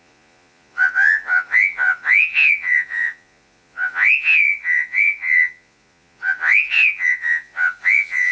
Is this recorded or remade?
remade